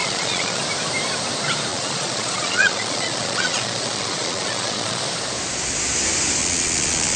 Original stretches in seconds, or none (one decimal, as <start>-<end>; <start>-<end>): 0.6-1.7; 5.0-6.4